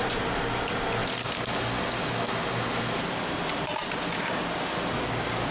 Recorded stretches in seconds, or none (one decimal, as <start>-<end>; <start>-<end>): 0.0-5.5